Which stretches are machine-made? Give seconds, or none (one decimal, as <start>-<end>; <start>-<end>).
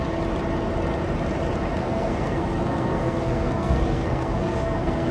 1.8-5.1